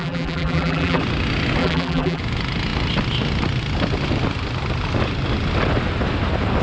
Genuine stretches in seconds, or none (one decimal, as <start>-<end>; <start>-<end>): 1.0-1.6; 2.2-6.6

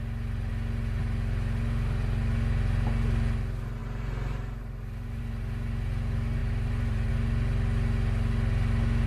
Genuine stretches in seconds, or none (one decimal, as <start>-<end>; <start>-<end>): 0.0-3.8; 5.2-6.4; 7.1-9.1

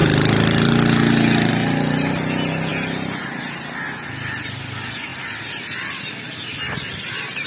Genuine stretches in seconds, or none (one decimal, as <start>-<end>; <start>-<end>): 0.0-2.7; 3.6-7.5

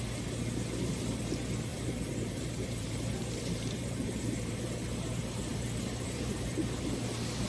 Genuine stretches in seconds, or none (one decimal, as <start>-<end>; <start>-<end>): 0.0-1.7; 4.6-5.5; 6.6-7.5

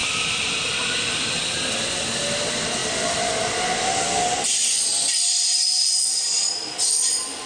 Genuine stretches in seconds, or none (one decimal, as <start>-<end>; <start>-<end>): 0.0-7.5